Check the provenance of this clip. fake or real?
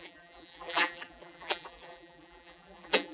fake